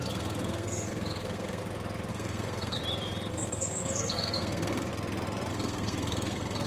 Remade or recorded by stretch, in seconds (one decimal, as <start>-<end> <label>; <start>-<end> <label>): 0.0-1.6 remade; 1.6-2.1 recorded; 2.1-2.8 remade; 2.8-3.3 recorded; 3.3-4.9 remade; 4.9-5.5 recorded; 5.5-6.7 remade